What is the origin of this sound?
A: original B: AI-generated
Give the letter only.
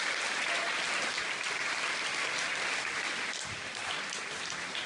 B